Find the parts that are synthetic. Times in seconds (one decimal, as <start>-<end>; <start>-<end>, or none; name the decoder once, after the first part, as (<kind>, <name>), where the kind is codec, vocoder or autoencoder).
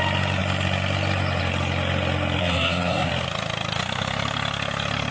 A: 2.4-3.1 (codec, SNAC)